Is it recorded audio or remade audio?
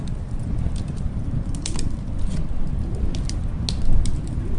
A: recorded